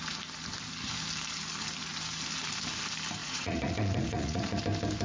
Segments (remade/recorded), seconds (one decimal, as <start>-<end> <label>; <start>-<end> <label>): 0.0-3.2 recorded; 3.2-4.6 remade; 4.6-5.0 recorded